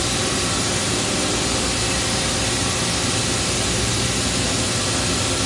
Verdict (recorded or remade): recorded